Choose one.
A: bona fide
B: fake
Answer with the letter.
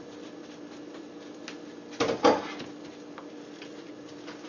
A